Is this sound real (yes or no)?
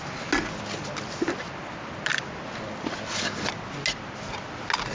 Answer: yes